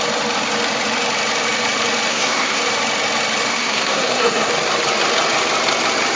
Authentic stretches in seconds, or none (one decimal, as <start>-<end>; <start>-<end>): 0.0-2.1; 2.6-3.5; 4.5-6.2